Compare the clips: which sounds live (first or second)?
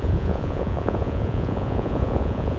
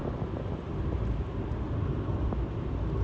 second